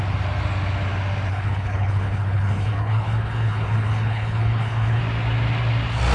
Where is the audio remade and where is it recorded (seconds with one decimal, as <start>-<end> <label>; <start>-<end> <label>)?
0.0-1.3 recorded; 1.3-5.0 remade; 5.0-6.1 recorded